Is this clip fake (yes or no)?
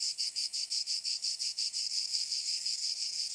yes